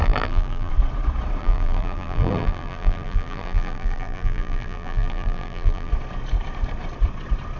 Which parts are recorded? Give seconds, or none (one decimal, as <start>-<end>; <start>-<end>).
0.7-1.4; 5.9-7.6